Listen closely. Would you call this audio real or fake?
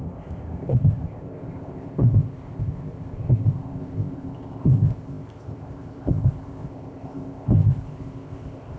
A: fake